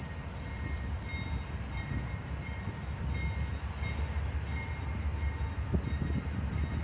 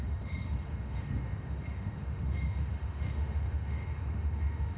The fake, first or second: second